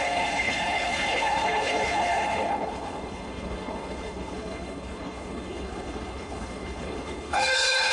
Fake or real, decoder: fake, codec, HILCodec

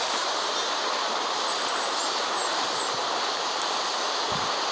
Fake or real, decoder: real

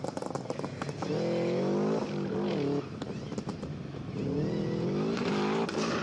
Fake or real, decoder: real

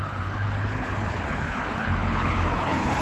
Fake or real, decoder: fake, codec, HILCodec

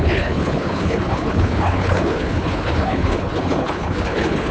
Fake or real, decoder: fake, codec, HILCodec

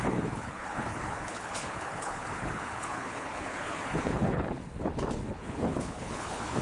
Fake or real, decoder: fake, codec, HILCodec